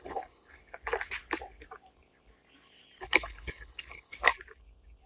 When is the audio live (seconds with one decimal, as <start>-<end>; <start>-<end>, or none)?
0.6-3.0; 4.3-5.1

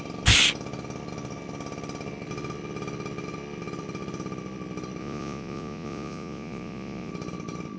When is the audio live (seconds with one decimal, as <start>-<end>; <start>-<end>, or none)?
0.0-5.0; 7.1-7.8

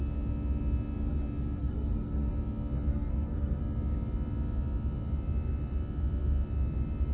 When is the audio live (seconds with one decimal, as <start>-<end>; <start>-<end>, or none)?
0.0-1.6; 2.3-2.9; 3.6-7.1

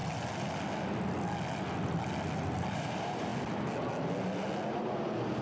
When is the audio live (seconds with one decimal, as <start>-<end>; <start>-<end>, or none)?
0.0-2.7; 3.3-4.7